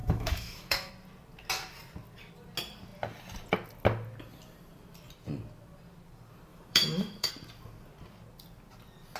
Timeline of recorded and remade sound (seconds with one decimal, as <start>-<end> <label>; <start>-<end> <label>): 0.0-0.9 remade; 0.9-6.5 recorded; 6.5-7.3 remade; 7.3-9.2 recorded

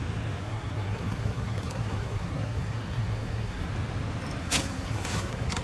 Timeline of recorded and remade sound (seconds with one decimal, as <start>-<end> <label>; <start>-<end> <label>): 0.0-0.4 recorded; 0.4-3.7 remade; 3.7-4.4 recorded; 4.4-5.6 remade

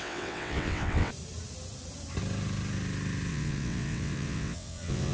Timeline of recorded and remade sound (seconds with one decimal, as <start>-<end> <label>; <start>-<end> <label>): 0.0-1.1 remade; 1.1-3.3 recorded; 3.3-5.1 remade

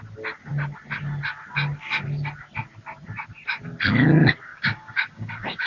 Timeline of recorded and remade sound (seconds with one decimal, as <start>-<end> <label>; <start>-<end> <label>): 0.0-4.5 recorded; 4.5-5.7 remade